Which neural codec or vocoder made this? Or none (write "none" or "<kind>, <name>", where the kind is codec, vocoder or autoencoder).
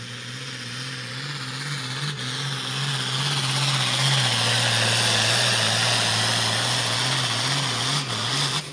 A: none